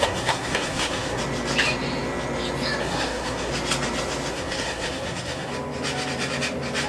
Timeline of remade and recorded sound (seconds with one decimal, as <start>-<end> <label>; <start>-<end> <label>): 0.0-1.2 remade; 1.2-2.8 recorded; 2.8-3.5 remade; 3.5-4.3 recorded; 4.3-5.5 remade; 5.5-6.9 recorded